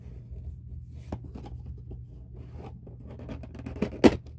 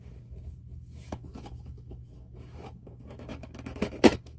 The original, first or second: first